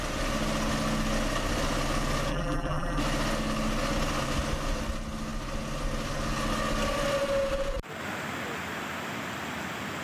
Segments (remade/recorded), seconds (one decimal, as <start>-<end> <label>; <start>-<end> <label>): 0.0-2.3 recorded; 2.3-3.0 remade; 3.0-10.0 recorded